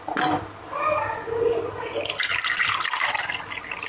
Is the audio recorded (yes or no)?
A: yes